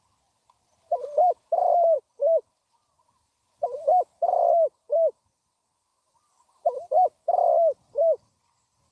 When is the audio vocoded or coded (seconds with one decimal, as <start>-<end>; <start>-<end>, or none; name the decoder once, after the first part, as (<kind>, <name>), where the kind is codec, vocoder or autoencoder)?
0.4-4.5 (vocoder, BigVGAN v2)